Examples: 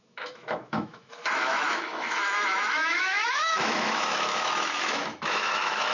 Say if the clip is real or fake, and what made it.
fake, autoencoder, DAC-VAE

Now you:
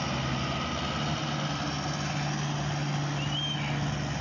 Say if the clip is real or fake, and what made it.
real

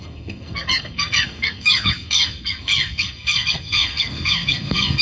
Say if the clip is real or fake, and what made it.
fake, codec, SNAC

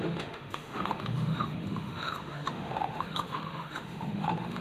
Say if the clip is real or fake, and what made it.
fake, autoencoder, DAC-VAE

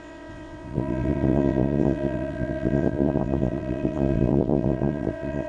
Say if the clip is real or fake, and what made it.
fake, vocoder, WaveNeXt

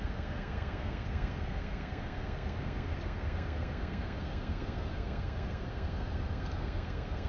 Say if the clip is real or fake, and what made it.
fake, codec, SNAC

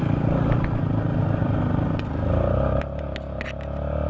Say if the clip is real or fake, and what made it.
real